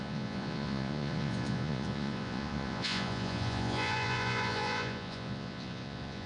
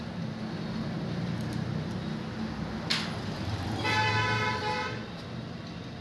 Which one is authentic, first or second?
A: second